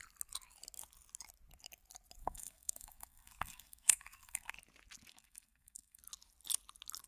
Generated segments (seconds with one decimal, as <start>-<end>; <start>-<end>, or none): 2.2-4.5; 5.1-6.0